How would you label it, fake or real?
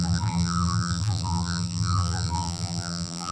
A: fake